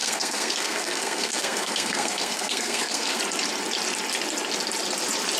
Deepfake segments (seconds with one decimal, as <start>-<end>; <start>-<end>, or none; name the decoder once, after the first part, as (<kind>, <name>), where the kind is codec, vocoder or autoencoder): 0.0-3.2 (codec, SNAC)